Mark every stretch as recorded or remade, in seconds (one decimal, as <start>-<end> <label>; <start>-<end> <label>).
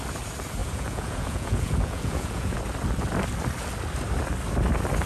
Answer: 0.0-0.6 recorded; 0.6-2.6 remade; 2.6-5.1 recorded